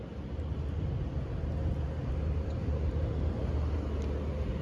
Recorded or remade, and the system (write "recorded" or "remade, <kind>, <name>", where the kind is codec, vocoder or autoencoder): recorded